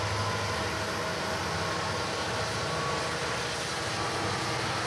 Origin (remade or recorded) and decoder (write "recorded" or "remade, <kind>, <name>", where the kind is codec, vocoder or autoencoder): recorded